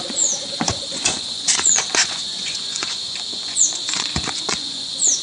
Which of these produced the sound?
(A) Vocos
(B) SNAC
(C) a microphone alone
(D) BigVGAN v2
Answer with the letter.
A